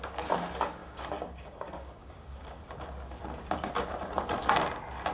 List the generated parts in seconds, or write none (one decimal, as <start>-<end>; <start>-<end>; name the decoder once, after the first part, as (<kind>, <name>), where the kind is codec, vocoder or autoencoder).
0.8-2.6 (codec, DAC)